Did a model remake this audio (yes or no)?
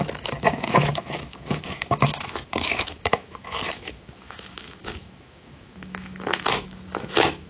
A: yes